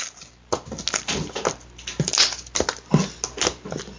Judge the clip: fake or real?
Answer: real